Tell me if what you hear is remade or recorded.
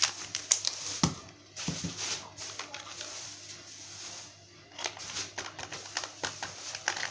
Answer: recorded